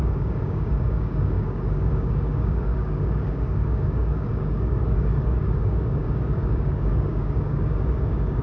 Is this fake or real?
fake